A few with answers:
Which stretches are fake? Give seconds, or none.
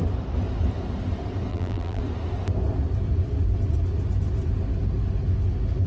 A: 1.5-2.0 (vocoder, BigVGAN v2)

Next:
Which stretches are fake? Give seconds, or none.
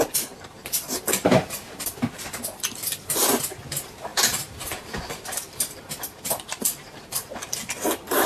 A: 0.0-2.4 (vocoder, BigVGAN v2); 3.0-8.3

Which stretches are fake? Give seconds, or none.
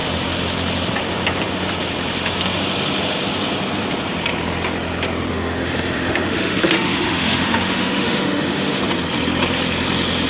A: 5.3-8.8 (autoencoder, DAC-VAE)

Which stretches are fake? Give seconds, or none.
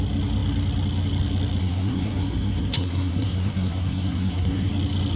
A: 1.6-4.7 (codec, SNAC)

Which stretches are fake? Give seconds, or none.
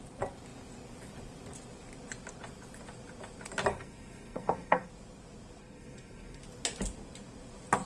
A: 3.7-4.9 (codec, SNAC); 5.6-6.4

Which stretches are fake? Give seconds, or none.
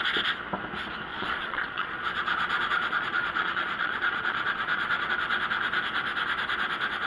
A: 1.1-5.1 (vocoder, Vocos)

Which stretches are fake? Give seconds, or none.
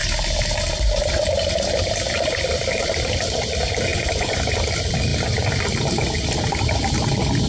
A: 3.9-4.4 (vocoder, Vocos)